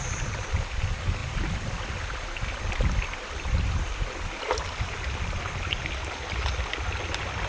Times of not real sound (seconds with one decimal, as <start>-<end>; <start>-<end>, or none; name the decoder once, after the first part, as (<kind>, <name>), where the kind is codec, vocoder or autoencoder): none